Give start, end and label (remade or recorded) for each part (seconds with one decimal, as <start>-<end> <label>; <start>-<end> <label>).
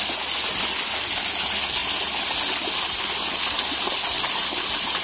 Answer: 0.0-5.0 recorded